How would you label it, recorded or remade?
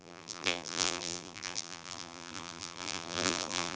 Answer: remade